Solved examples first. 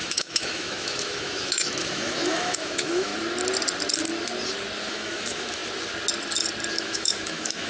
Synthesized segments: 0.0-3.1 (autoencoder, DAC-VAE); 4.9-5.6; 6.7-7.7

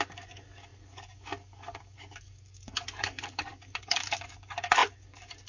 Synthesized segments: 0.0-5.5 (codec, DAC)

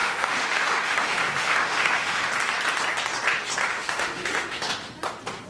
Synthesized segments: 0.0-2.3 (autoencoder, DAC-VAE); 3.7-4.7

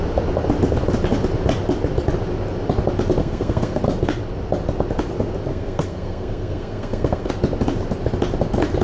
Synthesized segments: 3.2-3.8 (codec, SNAC); 5.5-7.3

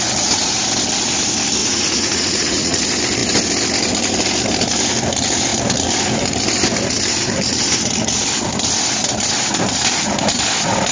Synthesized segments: 1.6-2.8 (vocoder, Vocos)

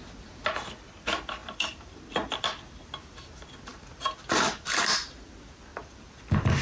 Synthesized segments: 1.4-2.9 (vocoder, BigVGAN v2); 5.7-6.6

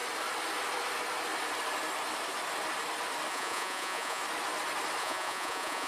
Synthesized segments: 3.3-4.2 (vocoder, Vocos); 5.0-5.9

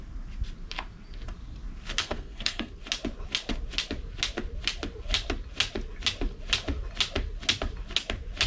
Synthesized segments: 2.0-2.7 (codec, SNAC)